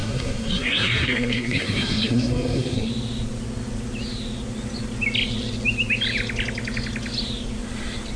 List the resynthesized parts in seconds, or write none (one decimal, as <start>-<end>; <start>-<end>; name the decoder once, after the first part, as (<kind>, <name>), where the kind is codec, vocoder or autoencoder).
0.0-2.9 (codec, SNAC)